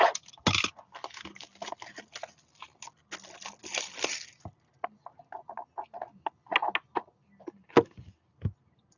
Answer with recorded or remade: recorded